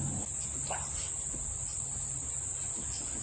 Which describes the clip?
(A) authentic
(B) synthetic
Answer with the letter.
A